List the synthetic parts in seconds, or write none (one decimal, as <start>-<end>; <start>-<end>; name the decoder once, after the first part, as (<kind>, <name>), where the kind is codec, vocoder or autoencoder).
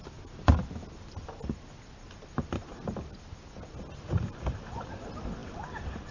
none